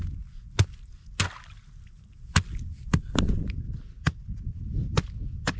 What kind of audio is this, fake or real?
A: real